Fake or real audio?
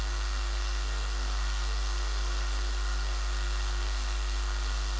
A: fake